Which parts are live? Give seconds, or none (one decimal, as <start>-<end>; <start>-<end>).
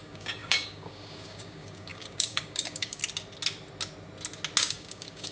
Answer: 3.0-4.6